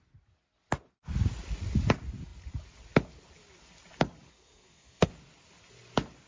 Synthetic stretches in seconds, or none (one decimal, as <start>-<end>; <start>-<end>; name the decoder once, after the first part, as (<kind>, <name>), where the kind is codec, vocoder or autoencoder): 4.3-5.1 (codec, SNAC)